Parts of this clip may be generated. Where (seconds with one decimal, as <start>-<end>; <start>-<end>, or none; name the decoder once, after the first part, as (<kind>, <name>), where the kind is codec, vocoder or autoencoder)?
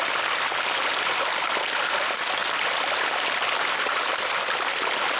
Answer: none